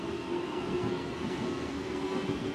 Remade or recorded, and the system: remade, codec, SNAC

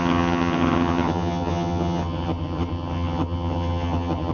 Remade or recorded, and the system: remade, vocoder, HiFi-GAN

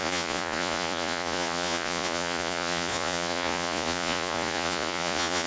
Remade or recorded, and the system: remade, vocoder, Vocos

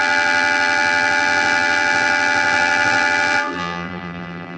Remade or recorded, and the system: remade, vocoder, BigVGAN v2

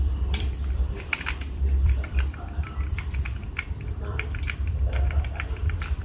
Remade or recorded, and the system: remade, vocoder, BigVGAN v2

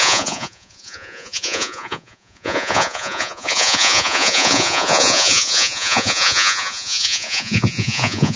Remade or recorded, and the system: remade, vocoder, Vocos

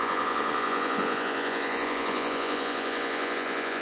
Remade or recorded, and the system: remade, vocoder, Vocos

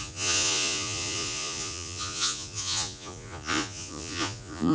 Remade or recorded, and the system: remade, vocoder, Vocos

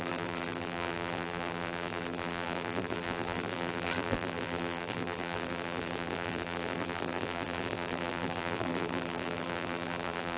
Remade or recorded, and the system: remade, vocoder, BigVGAN v2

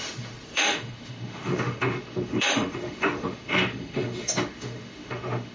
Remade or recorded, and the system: remade, autoencoder, DAC-VAE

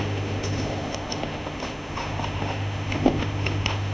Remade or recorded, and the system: remade, autoencoder, DAC-VAE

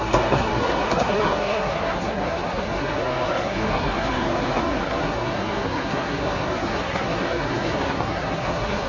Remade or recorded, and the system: remade, codec, SNAC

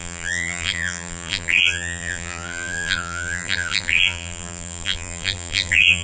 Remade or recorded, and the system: remade, vocoder, BigVGAN v2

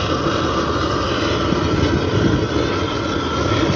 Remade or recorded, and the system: recorded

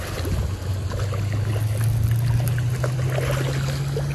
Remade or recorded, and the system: recorded